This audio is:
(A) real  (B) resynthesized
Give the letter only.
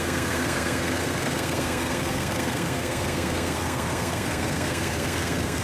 B